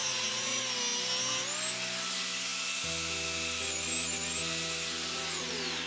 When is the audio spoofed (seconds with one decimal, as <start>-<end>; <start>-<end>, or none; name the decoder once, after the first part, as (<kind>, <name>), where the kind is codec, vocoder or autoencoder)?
0.0-0.6 (vocoder, Vocos)